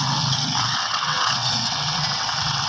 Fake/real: fake